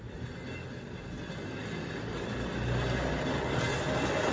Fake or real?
real